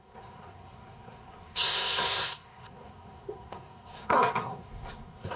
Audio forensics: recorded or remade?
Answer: remade